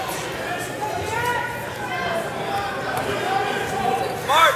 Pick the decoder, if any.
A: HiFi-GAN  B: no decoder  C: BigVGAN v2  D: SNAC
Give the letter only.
B